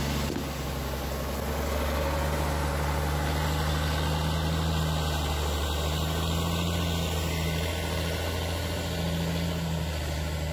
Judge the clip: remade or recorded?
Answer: recorded